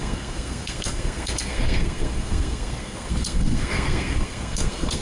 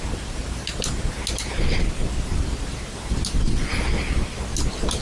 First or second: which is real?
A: second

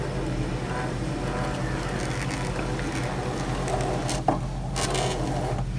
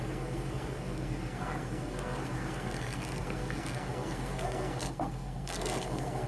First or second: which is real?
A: first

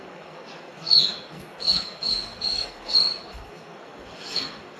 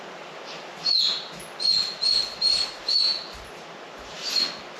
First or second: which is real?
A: second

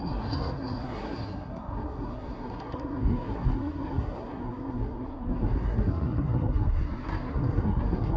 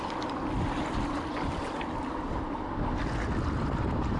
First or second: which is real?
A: second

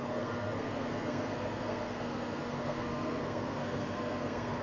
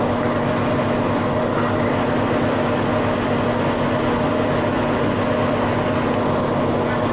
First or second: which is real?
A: second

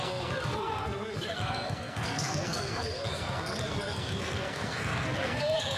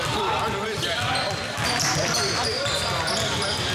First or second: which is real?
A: second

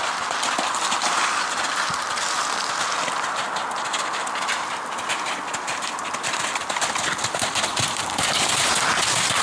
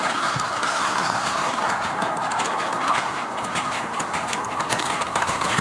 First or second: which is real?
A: first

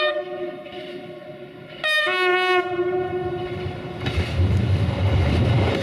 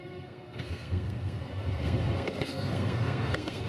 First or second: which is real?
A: first